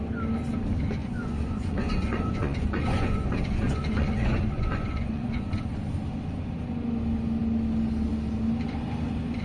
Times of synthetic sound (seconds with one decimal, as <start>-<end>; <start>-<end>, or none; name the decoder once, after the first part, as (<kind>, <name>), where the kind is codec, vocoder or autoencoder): 1.0-5.4 (vocoder, Vocos)